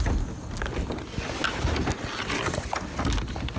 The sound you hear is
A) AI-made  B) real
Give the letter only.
B